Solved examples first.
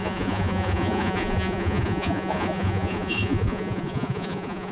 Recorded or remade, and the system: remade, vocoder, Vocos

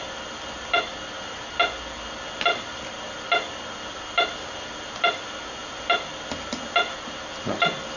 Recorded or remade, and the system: recorded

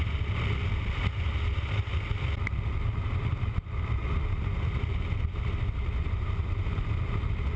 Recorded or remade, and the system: recorded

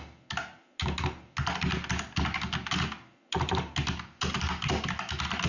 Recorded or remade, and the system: recorded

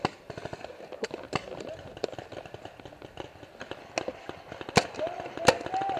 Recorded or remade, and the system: recorded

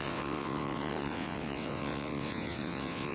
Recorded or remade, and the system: remade, vocoder, WaveNeXt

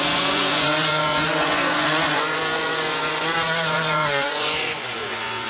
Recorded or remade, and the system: remade, vocoder, Vocos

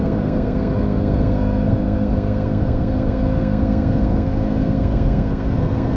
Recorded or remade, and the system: remade, codec, SNAC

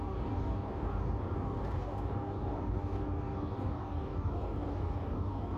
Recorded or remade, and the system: remade, codec, DAC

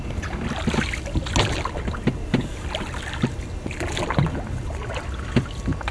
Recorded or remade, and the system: recorded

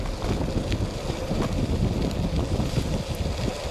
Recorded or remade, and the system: recorded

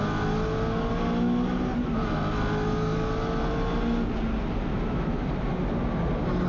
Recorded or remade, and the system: recorded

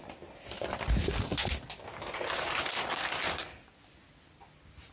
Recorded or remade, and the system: recorded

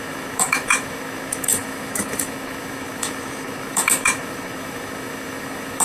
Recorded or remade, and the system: remade, autoencoder, DAC-VAE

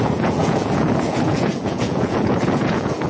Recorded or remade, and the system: remade, vocoder, Vocos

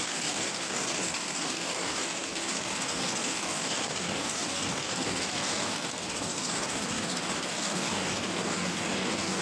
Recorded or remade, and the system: remade, codec, DAC